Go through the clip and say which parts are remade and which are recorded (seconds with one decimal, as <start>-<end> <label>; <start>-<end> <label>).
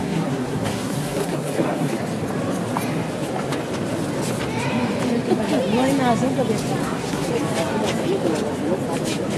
0.0-2.0 remade; 2.0-6.8 recorded; 6.8-7.3 remade; 7.3-9.4 recorded